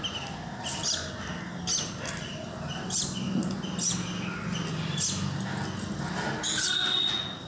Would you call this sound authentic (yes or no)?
yes